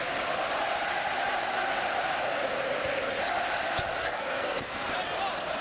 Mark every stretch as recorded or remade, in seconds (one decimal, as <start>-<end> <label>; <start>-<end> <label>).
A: 0.0-4.0 recorded; 4.0-4.9 remade; 4.9-5.6 recorded